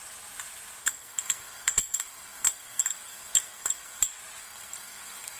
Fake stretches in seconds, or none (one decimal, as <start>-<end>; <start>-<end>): 0.8-4.0; 4.4-5.4